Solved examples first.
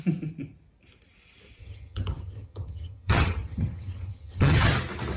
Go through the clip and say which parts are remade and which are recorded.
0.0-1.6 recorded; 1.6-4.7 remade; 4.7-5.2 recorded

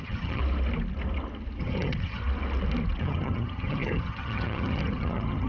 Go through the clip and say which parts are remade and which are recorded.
0.0-0.4 remade; 0.4-1.6 recorded; 1.6-2.2 remade; 2.2-3.0 recorded; 3.0-5.5 remade

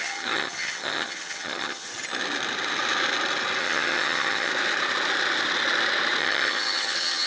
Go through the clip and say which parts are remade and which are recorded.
0.0-1.9 remade; 1.9-3.6 recorded; 3.6-4.5 remade; 4.5-6.2 recorded; 6.2-7.3 remade

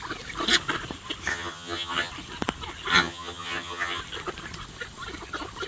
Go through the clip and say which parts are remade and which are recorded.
0.0-1.3 recorded; 1.3-2.1 remade; 2.1-2.9 recorded; 2.9-4.0 remade; 4.0-5.7 recorded

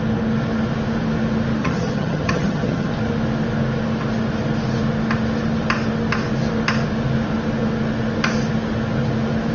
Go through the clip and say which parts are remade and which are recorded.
0.0-1.6 recorded; 1.6-2.9 remade; 2.9-9.5 recorded

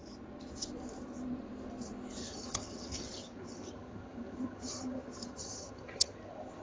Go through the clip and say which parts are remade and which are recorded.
0.0-2.2 recorded; 2.2-6.6 remade

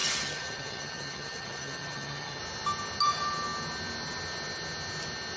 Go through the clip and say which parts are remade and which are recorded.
0.0-2.4 remade; 2.4-5.4 recorded

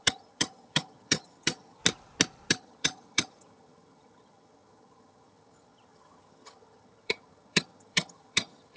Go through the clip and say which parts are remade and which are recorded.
0.0-1.8 remade; 1.8-2.5 recorded; 2.5-8.8 remade